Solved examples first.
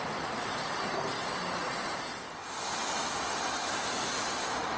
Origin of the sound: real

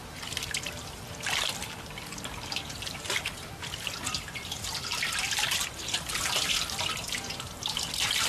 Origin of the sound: fake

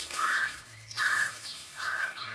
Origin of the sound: fake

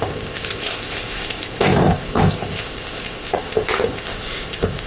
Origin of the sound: fake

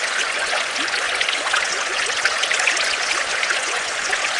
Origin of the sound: fake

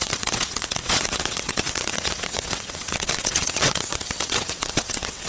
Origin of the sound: fake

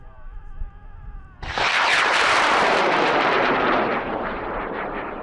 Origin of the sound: fake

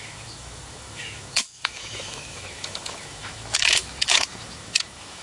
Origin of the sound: fake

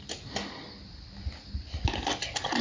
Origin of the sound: real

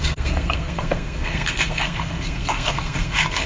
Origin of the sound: fake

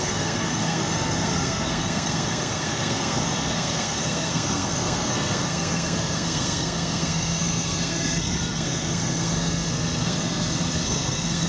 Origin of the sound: fake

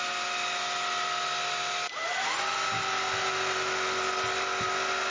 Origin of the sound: real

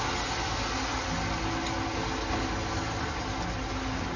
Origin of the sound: real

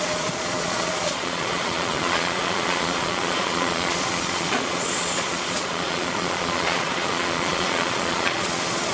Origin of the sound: fake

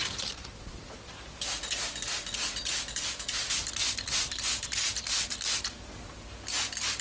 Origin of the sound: real